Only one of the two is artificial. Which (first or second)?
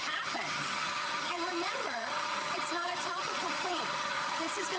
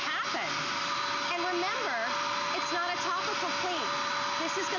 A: first